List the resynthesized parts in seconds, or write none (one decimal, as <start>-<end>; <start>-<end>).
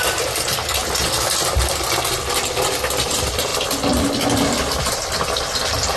0.0-0.8; 2.2-3.5; 4.8-6.0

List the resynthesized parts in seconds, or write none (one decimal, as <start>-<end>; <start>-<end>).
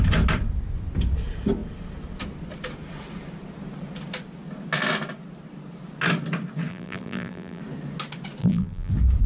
6.7-7.6; 8.4-8.9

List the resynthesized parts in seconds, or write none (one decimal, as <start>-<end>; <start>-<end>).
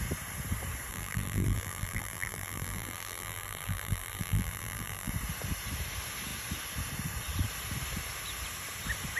0.9-5.1